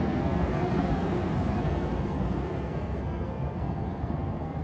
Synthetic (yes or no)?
yes